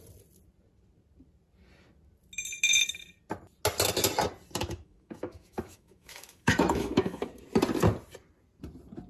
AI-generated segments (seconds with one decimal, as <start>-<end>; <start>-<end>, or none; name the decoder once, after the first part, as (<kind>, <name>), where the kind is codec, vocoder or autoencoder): 4.6-7.3 (autoencoder, DAC-VAE)